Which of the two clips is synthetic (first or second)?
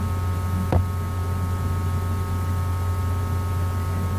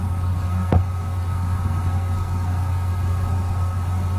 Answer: second